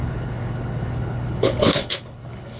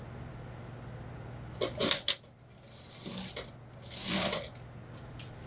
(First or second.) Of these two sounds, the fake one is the first